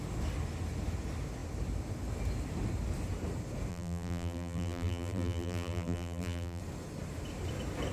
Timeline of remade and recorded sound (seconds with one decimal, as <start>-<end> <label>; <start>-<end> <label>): 0.0-3.7 recorded; 3.7-6.6 remade; 6.6-7.9 recorded